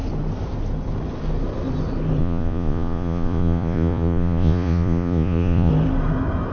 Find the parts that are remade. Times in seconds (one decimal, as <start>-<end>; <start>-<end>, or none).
2.2-5.7